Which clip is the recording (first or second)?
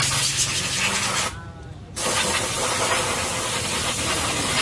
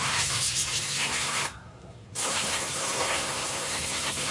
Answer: first